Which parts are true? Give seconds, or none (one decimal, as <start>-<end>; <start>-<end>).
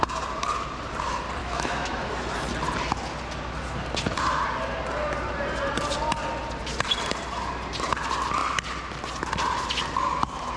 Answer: 0.0-1.4; 2.1-10.6